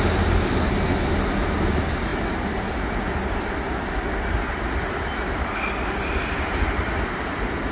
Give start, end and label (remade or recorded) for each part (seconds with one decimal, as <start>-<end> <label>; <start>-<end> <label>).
0.0-7.7 recorded